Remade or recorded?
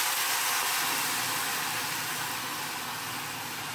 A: recorded